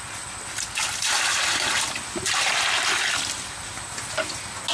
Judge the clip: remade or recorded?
recorded